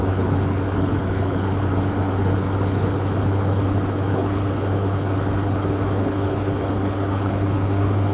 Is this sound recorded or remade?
remade